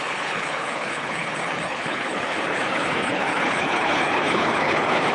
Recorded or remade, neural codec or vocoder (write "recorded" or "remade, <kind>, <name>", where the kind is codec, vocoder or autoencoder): remade, codec, HILCodec